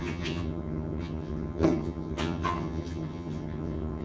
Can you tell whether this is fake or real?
fake